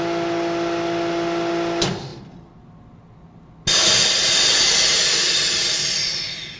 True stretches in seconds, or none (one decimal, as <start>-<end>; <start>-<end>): 0.0-6.6